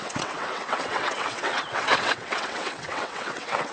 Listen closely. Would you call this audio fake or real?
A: fake